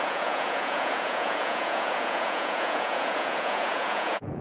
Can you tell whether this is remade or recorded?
remade